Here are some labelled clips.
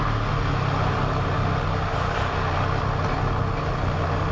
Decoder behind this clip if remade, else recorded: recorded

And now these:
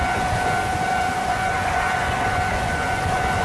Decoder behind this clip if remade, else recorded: remade, vocoder, Vocos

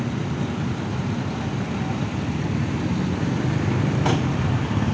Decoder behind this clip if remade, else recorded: recorded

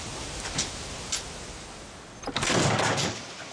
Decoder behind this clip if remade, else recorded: recorded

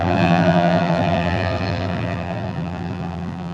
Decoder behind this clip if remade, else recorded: remade, vocoder, BigVGAN v2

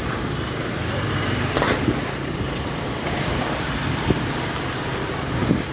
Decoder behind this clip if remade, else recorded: remade, vocoder, BigVGAN v2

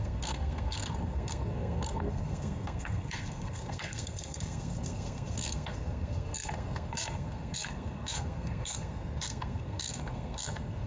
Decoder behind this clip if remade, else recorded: remade, codec, SNAC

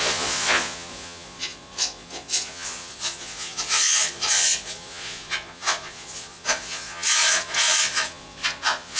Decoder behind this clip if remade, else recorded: remade, vocoder, Vocos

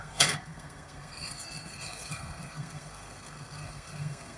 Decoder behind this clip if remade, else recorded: remade, codec, SNAC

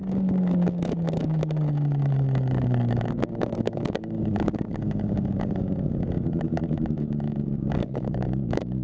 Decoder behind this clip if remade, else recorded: remade, codec, DAC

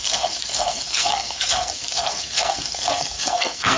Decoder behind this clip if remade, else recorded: remade, codec, SNAC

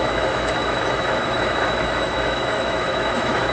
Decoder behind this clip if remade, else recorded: remade, autoencoder, DAC-VAE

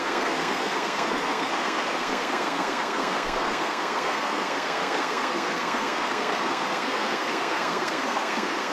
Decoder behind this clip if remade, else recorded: remade, codec, SNAC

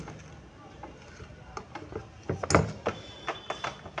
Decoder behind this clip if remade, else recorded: recorded